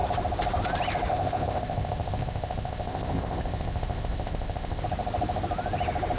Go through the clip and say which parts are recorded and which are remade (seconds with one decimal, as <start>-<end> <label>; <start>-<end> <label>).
0.0-1.1 recorded; 1.1-4.8 remade; 4.8-6.2 recorded